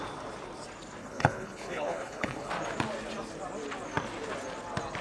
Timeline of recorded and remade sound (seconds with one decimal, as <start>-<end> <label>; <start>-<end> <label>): 0.0-1.0 recorded; 1.0-2.5 remade; 2.5-5.0 recorded